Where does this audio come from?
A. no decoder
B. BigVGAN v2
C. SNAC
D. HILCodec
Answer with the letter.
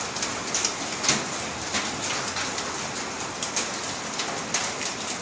A